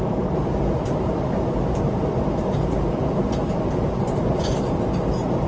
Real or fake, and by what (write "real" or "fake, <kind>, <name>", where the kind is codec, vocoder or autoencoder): fake, vocoder, BigVGAN v2